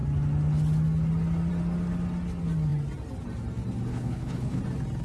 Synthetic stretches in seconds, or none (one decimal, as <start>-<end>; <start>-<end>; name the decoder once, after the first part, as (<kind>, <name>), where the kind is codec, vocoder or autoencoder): 3.9-4.6 (codec, HILCodec)